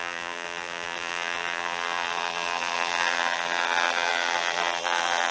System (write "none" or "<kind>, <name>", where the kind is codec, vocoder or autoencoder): vocoder, BigVGAN v2